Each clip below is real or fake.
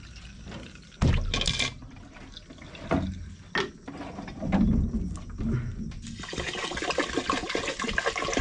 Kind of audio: real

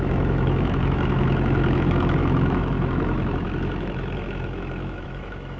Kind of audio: fake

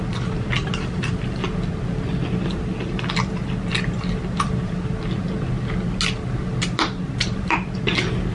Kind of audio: real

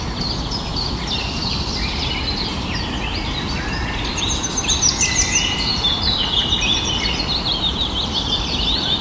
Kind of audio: real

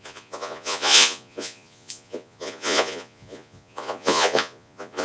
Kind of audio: fake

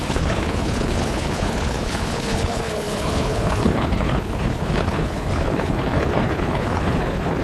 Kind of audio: fake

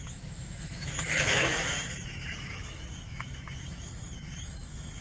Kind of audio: fake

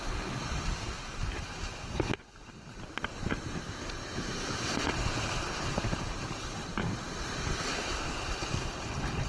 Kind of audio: real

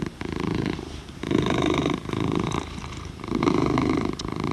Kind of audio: fake